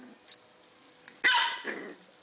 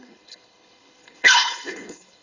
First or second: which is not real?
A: second